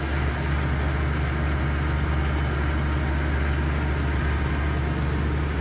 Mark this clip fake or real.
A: real